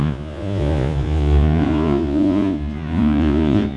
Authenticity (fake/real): fake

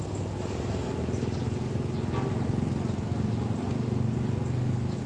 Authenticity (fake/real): real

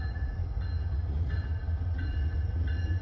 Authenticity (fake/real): fake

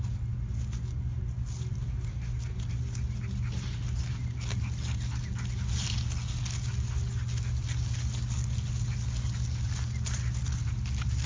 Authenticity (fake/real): real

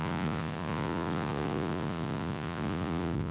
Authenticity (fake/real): fake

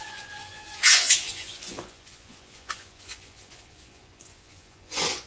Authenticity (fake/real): fake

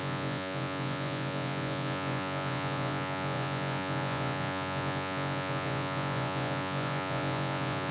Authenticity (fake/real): fake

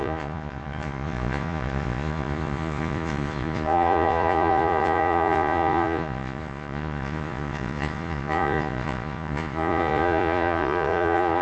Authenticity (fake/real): fake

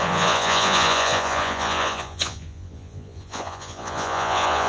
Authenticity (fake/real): fake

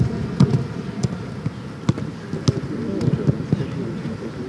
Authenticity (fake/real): real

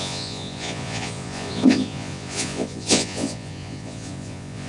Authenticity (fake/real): fake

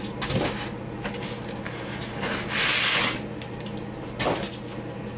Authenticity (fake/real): real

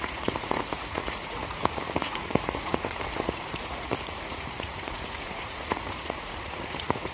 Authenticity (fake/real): fake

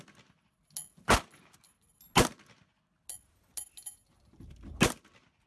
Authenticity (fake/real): real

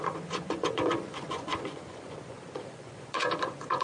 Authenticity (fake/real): fake